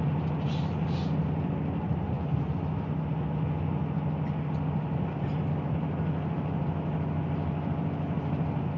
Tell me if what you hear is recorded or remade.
recorded